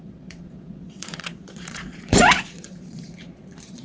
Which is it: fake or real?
fake